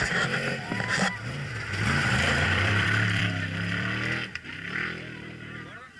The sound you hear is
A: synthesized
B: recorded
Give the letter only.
A